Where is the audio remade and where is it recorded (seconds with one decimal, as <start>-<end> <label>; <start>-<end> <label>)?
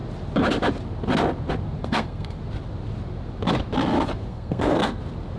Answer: 0.0-1.8 recorded; 1.8-2.4 remade; 2.4-4.3 recorded; 4.3-5.0 remade; 5.0-5.4 recorded